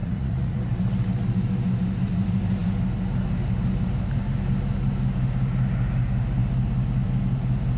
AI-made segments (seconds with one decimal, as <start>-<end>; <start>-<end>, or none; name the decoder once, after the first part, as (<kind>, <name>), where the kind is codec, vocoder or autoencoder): 0.0-0.6 (vocoder, Vocos)